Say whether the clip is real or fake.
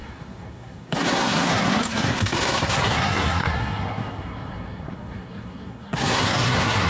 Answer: fake